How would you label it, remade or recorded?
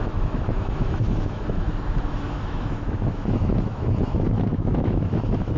remade